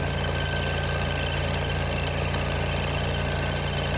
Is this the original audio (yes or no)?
yes